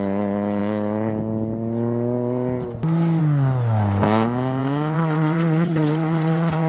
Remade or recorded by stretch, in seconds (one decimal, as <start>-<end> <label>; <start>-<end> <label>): 0.0-4.6 recorded; 4.6-6.7 remade